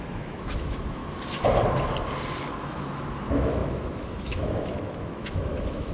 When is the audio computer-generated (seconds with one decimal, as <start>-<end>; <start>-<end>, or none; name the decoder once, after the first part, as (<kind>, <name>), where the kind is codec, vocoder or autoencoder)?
0.0-1.0 (autoencoder, DAC-VAE); 2.6-5.9